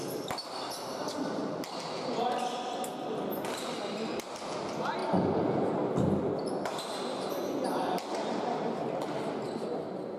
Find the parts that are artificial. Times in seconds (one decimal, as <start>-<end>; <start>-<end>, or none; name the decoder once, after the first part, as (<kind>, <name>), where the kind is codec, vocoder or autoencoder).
none